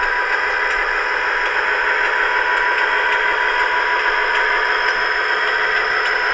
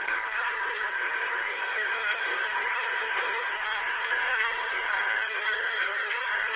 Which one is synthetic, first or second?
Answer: second